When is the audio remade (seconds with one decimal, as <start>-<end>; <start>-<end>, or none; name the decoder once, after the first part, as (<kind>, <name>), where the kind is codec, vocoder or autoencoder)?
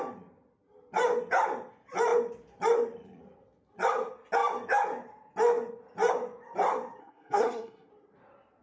7.0-7.9 (codec, SNAC)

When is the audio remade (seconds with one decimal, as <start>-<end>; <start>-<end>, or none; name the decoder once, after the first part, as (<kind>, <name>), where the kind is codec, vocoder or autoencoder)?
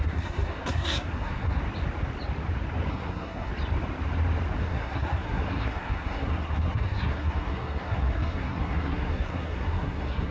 0.0-1.6 (codec, SNAC); 2.9-3.5; 4.6-10.3